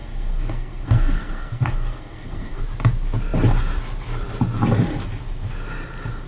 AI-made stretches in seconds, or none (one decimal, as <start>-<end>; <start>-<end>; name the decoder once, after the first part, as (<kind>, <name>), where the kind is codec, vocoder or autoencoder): 0.0-2.6 (codec, SNAC)